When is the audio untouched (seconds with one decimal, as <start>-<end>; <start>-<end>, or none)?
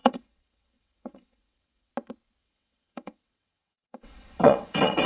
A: 1.9-2.4